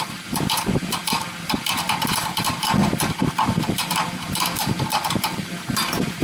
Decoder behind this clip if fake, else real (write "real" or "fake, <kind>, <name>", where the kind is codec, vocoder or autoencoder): fake, vocoder, BigVGAN v2